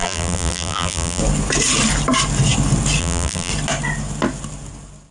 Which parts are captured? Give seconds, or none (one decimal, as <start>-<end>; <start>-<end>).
1.2-3.0; 3.5-5.1